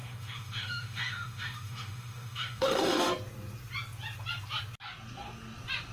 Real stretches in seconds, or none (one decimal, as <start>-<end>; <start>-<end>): 3.1-5.9